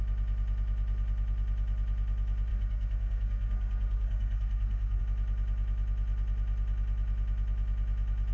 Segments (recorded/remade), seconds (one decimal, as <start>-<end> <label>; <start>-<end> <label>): 0.0-2.5 recorded; 2.5-5.0 remade; 5.0-8.3 recorded